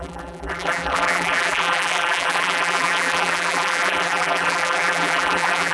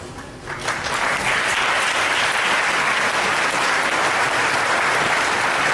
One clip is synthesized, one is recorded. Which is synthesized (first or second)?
first